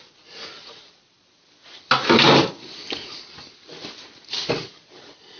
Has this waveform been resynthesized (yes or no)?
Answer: no